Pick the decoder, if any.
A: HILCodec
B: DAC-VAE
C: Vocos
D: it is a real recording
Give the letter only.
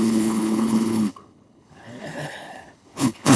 A